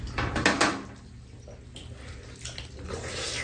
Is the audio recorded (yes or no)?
yes